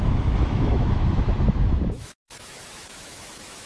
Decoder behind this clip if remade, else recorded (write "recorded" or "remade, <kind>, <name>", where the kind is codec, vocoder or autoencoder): remade, autoencoder, DAC-VAE